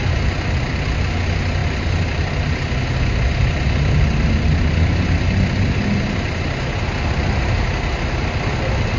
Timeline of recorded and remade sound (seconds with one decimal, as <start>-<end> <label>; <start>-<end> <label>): 0.0-9.0 recorded